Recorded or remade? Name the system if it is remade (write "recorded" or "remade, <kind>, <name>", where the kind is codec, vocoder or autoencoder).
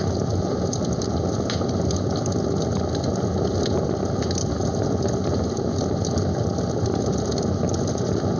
recorded